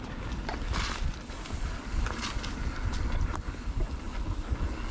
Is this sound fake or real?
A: real